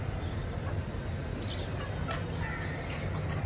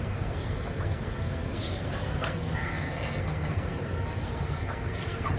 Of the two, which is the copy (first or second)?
second